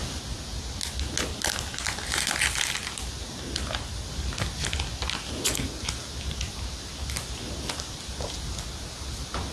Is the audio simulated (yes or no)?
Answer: no